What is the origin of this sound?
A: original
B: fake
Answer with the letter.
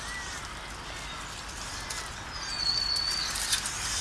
A